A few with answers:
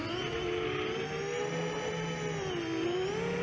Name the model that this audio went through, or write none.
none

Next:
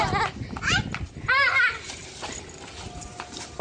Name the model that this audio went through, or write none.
none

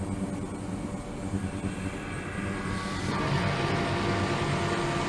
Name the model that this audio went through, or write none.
none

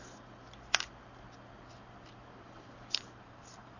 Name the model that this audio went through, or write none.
none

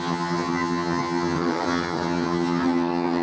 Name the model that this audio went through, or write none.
vocoder, HiFi-GAN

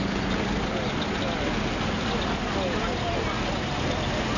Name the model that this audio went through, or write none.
none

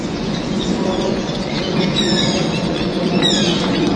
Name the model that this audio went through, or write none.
vocoder, Vocos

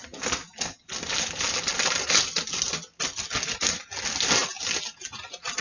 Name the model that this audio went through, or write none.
none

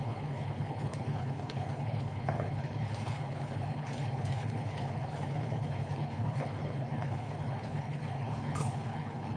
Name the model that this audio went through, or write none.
codec, HILCodec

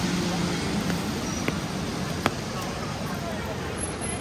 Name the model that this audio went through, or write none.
none